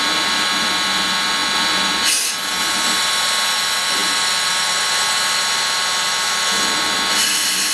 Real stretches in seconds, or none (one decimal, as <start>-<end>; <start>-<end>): 0.0-7.7